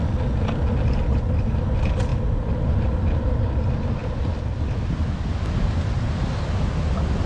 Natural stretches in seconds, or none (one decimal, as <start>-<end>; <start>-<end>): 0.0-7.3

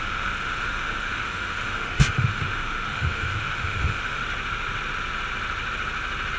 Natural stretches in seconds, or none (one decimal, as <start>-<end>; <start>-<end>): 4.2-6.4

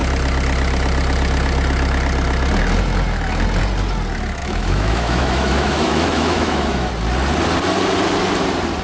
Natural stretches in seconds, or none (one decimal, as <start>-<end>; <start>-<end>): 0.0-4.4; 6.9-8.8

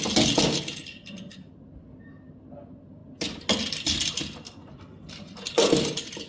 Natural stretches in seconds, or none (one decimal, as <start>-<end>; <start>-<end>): 0.0-6.3

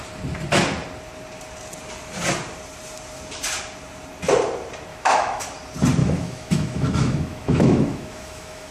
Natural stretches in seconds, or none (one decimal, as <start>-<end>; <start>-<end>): 0.0-4.9; 5.4-6.0